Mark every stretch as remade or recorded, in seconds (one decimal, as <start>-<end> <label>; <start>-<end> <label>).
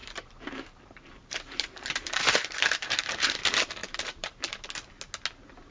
0.0-3.4 remade; 3.4-3.8 recorded; 3.8-4.5 remade; 4.5-5.7 recorded